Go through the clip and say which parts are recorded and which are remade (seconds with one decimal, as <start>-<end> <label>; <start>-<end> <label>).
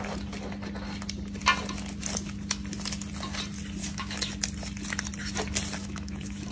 0.0-3.8 recorded; 3.8-4.3 remade; 4.3-5.8 recorded; 5.8-6.5 remade